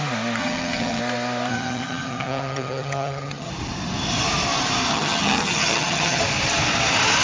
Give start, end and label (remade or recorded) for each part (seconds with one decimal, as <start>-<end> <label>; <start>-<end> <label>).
0.0-0.4 recorded; 0.4-1.0 remade; 1.0-1.5 recorded; 1.5-3.5 remade; 3.5-4.9 recorded; 4.9-6.2 remade; 6.2-7.2 recorded